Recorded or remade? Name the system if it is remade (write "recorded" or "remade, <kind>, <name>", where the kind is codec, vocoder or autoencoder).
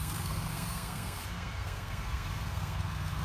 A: remade, codec, SNAC